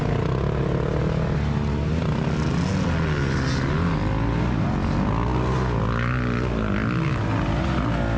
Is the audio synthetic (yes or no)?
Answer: no